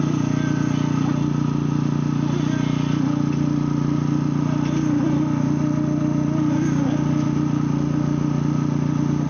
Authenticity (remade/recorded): recorded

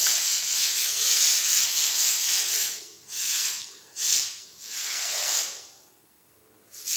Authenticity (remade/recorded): remade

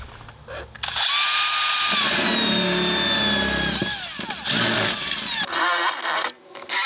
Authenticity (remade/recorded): recorded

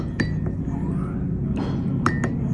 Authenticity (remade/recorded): recorded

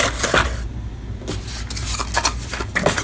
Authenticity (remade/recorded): recorded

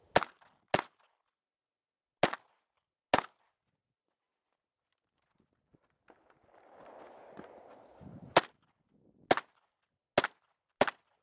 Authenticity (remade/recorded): recorded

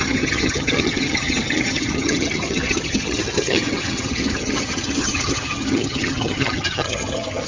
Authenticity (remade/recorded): remade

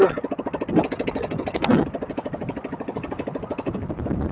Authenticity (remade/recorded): recorded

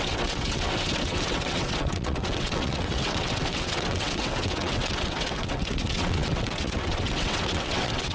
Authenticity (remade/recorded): remade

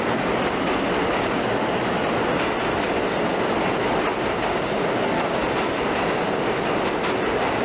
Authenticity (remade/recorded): recorded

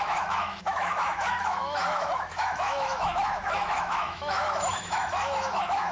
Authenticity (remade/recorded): remade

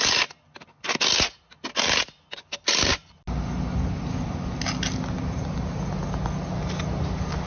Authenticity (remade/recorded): recorded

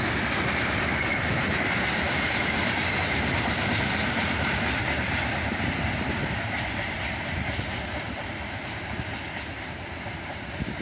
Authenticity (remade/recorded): remade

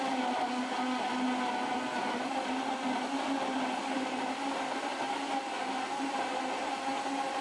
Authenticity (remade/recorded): recorded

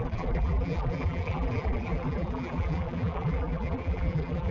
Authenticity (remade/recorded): remade